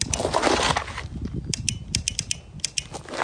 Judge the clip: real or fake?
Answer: real